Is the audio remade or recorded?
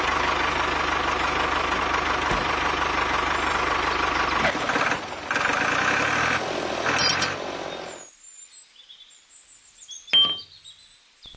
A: recorded